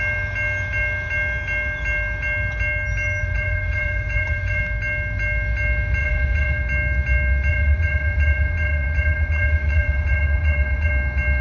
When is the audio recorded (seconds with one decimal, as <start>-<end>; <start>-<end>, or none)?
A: 0.0-3.2; 4.6-6.0; 6.6-7.5; 10.9-11.4